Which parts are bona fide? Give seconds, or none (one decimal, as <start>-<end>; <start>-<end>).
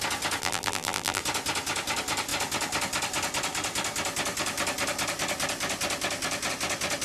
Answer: 0.0-0.4; 1.2-7.0